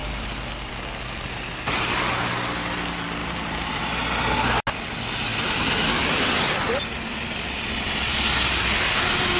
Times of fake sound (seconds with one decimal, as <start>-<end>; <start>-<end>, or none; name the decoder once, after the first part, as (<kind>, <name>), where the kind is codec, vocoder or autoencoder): 0.0-0.7 (vocoder, BigVGAN v2); 3.2-3.8; 5.3-8.2